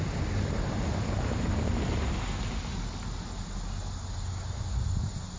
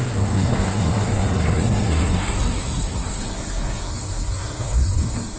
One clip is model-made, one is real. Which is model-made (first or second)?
second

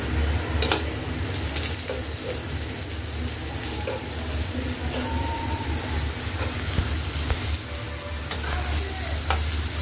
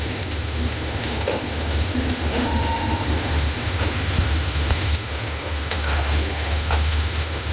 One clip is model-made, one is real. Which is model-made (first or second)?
second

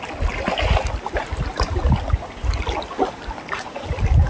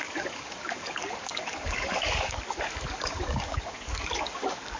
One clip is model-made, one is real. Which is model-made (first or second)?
second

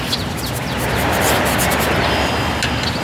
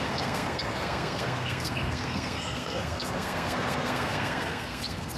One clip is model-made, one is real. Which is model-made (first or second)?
second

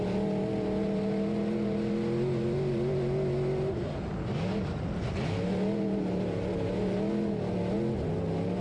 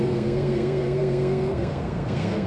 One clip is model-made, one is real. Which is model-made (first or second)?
second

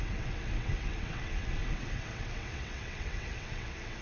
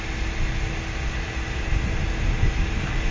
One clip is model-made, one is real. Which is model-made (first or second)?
first